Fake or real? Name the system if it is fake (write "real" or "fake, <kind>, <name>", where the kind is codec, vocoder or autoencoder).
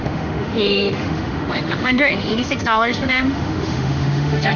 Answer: fake, autoencoder, DAC-VAE